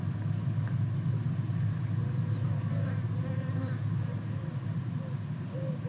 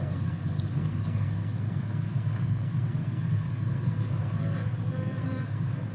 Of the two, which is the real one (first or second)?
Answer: first